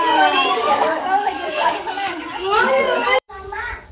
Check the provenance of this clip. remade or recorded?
remade